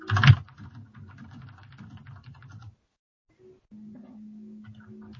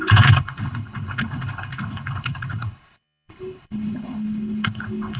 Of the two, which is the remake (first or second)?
second